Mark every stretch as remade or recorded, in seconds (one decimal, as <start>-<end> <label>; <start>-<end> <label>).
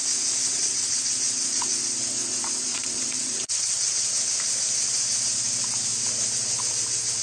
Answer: 0.0-0.5 recorded; 0.5-1.0 remade; 1.0-2.7 recorded; 2.7-4.2 remade; 4.2-7.2 recorded